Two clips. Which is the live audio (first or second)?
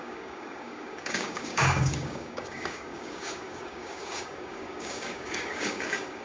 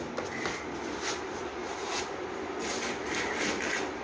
second